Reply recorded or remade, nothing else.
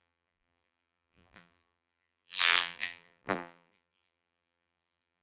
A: remade